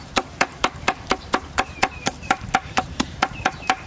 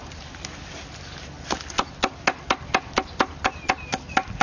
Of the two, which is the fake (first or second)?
first